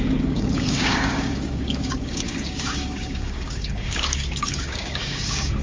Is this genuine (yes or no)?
no